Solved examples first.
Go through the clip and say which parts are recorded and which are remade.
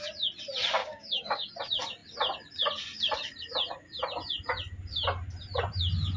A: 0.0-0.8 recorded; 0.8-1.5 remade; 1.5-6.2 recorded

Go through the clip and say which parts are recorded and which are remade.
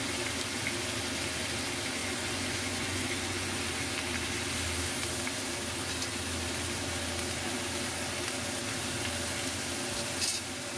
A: 0.0-2.0 recorded; 2.0-3.6 remade; 3.6-10.8 recorded